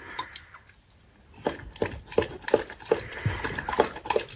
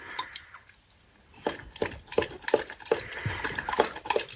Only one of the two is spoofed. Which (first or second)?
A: second